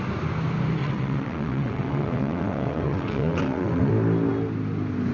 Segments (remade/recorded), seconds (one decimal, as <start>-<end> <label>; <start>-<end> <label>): 0.0-0.8 recorded; 0.8-3.9 remade; 3.9-5.1 recorded